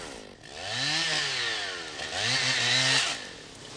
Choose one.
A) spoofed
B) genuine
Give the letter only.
B